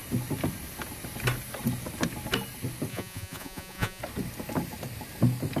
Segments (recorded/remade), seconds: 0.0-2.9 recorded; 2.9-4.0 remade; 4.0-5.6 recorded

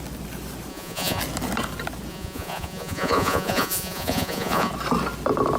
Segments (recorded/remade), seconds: 0.0-0.7 recorded; 0.7-1.2 remade; 1.2-2.1 recorded; 2.1-4.7 remade; 4.7-5.6 recorded

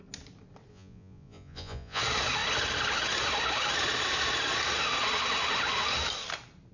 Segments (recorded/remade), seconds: 0.0-0.7 recorded; 0.7-2.0 remade; 2.0-6.7 recorded

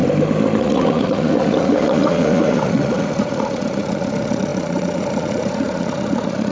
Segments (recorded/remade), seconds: 0.0-0.6 recorded; 0.6-6.5 remade

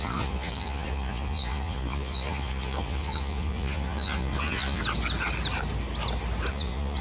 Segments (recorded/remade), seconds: 0.0-4.8 remade; 4.8-6.5 recorded; 6.5-7.0 remade

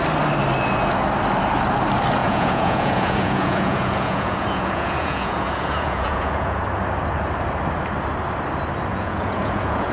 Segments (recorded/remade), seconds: 0.0-2.2 recorded; 2.2-6.6 remade; 6.6-8.9 recorded; 8.9-9.9 remade

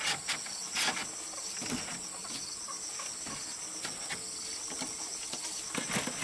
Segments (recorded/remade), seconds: 0.0-6.2 recorded